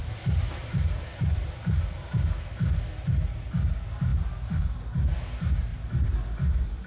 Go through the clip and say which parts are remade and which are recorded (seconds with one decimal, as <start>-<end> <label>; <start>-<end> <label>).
0.0-0.6 recorded; 0.6-1.5 remade; 1.5-4.1 recorded; 4.1-4.6 remade; 4.6-5.7 recorded; 5.7-6.9 remade